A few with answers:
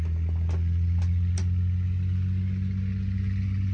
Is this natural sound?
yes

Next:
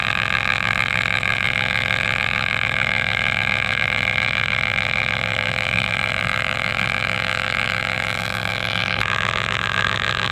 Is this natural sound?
no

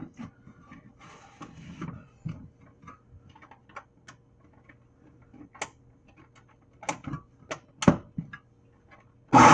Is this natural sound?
yes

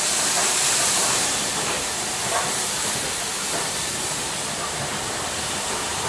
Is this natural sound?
no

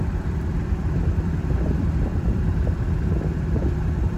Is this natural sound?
no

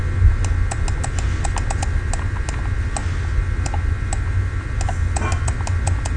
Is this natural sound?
yes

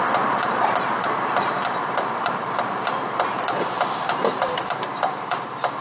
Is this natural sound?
no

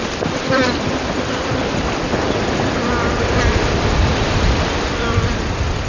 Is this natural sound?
no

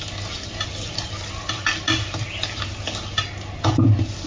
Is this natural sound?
yes